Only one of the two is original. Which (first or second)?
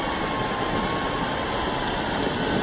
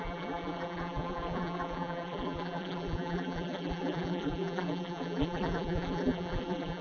first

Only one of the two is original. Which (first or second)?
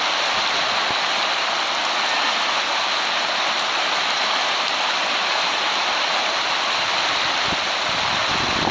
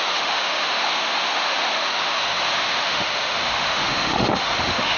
first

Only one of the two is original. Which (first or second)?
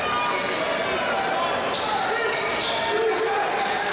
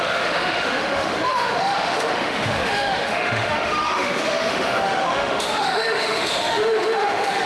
first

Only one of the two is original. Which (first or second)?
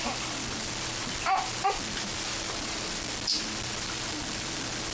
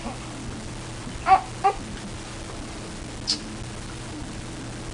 second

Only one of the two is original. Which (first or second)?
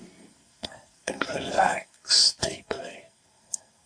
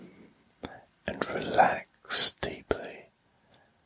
second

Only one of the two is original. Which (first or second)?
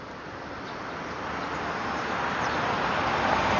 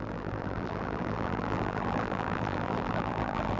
first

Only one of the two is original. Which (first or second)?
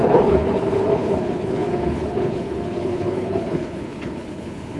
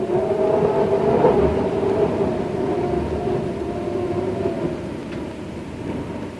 second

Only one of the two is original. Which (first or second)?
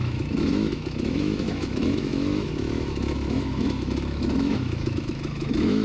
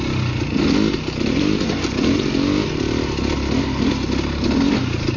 second